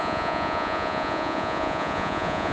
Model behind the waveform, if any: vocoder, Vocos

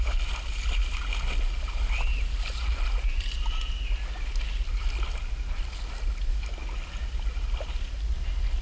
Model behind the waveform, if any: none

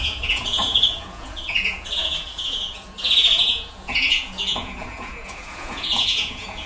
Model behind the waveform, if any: vocoder, Vocos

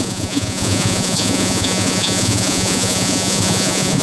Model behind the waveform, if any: vocoder, Vocos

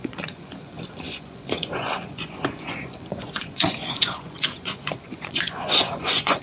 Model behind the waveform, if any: vocoder, Vocos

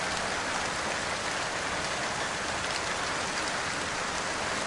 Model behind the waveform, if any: none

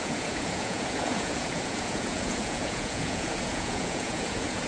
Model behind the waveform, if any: vocoder, Vocos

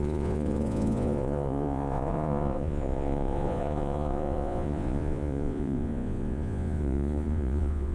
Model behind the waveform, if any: vocoder, Vocos